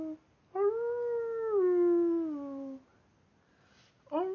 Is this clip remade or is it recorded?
recorded